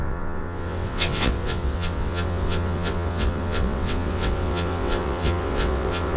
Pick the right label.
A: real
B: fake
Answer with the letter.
B